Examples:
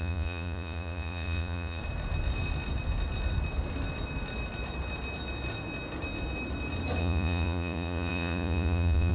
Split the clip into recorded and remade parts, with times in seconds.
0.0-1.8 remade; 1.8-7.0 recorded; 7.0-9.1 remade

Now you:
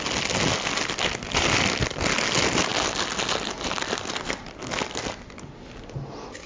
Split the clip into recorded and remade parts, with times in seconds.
0.0-6.5 recorded

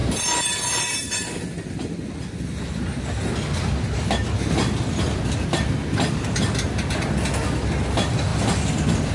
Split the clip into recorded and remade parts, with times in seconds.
0.0-9.1 recorded

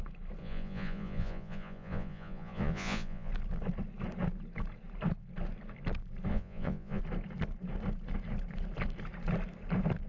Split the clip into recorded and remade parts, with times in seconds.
0.0-0.4 recorded; 0.4-3.3 remade; 3.3-6.3 recorded; 6.3-7.0 remade; 7.0-10.1 recorded

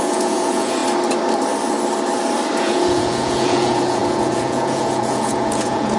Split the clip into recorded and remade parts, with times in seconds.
0.0-0.8 remade; 0.8-2.6 recorded; 2.6-6.0 remade

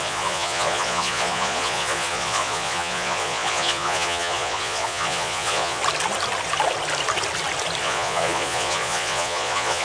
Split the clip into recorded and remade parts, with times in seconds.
0.0-5.8 remade; 5.8-7.8 recorded; 7.8-9.8 remade

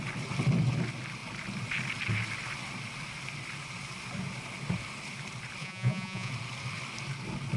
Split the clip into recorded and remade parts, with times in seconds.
0.0-5.6 recorded; 5.6-6.3 remade; 6.3-7.6 recorded

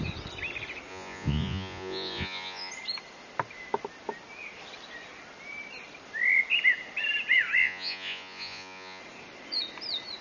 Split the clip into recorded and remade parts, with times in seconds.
0.0-0.9 recorded; 0.9-2.7 remade; 2.7-7.6 recorded; 7.6-9.0 remade; 9.0-10.2 recorded